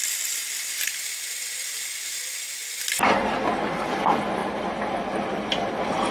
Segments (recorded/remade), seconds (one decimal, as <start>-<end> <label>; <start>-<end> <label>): 0.0-4.4 recorded; 4.4-5.0 remade; 5.0-6.1 recorded